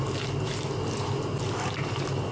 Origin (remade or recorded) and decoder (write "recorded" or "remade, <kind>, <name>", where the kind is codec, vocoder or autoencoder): recorded